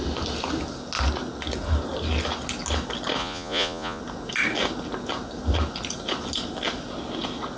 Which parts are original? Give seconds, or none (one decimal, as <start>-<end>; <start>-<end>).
0.0-3.2; 4.0-7.6